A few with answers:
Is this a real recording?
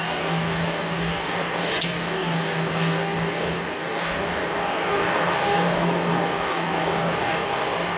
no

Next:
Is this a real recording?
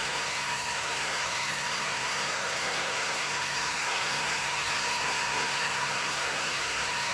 no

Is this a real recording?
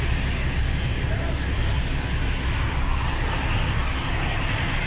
yes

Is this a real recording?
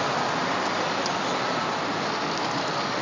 no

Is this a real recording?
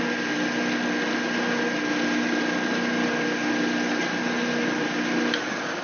yes